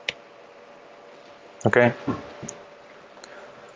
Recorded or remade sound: remade